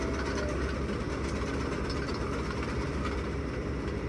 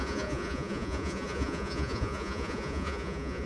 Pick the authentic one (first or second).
first